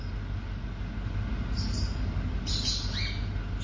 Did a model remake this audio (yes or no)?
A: no